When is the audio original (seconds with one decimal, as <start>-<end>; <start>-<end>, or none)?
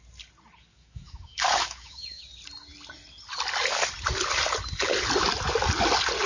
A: 0.0-0.7; 2.2-6.3